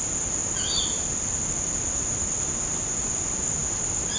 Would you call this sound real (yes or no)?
yes